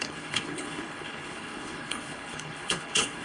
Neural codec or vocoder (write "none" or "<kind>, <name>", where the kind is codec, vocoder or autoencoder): codec, HILCodec